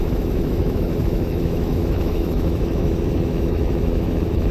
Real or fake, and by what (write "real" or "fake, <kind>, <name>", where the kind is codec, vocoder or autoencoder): fake, autoencoder, DAC-VAE